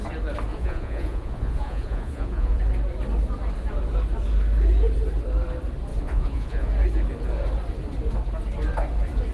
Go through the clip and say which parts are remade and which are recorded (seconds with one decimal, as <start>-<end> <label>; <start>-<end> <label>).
0.0-0.5 recorded; 0.5-2.6 remade; 2.6-5.9 recorded; 5.9-6.7 remade; 6.7-9.3 recorded